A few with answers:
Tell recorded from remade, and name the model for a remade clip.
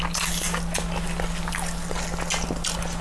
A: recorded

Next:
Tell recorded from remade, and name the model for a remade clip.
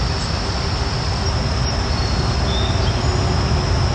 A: recorded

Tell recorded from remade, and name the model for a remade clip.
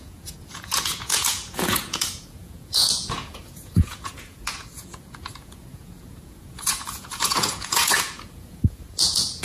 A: remade, vocoder, Vocos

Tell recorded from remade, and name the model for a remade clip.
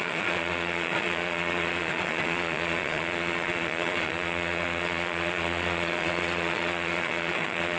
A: remade, vocoder, Vocos